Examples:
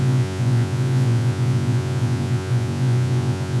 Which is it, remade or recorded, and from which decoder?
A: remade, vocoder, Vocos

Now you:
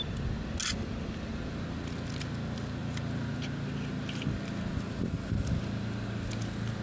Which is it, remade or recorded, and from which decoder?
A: recorded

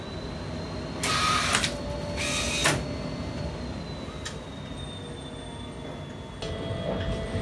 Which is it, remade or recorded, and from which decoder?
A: recorded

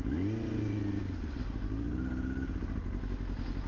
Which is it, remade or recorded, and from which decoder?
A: recorded